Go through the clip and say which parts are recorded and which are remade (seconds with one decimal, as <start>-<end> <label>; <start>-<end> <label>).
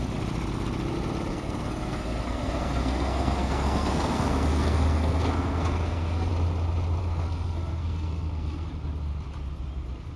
0.0-1.3 recorded; 1.3-6.3 remade; 6.3-7.0 recorded; 7.0-8.7 remade; 8.7-10.2 recorded